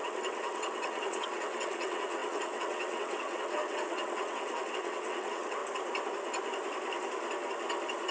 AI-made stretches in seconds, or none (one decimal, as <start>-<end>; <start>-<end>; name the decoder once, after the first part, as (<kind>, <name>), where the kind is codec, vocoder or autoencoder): 0.0-5.6 (vocoder, WaveNeXt)